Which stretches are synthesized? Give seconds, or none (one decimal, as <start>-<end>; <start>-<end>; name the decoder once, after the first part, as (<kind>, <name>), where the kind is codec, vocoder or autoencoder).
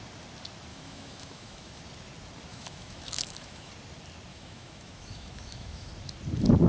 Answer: 0.7-1.8 (autoencoder, DAC-VAE); 2.5-3.7; 4.3-5.9